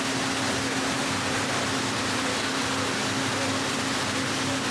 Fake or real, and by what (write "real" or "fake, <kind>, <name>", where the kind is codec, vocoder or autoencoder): real